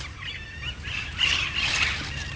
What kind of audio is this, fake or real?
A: real